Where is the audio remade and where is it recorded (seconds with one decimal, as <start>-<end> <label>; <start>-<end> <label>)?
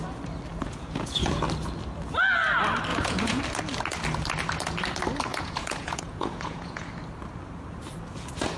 0.0-0.5 recorded; 0.5-1.4 remade; 1.4-2.9 recorded; 2.9-3.4 remade; 3.4-5.3 recorded; 5.3-7.0 remade; 7.0-8.6 recorded